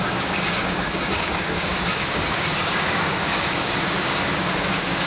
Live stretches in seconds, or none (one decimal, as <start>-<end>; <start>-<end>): none